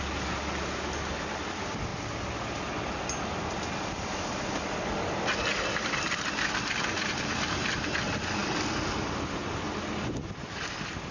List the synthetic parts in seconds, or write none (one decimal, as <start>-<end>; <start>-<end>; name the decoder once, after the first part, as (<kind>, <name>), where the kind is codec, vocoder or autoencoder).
none